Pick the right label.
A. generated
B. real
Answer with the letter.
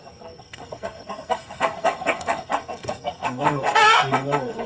A